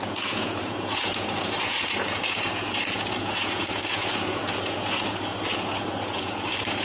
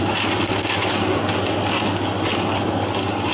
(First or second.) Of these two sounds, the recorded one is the second